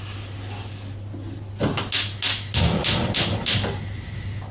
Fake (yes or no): no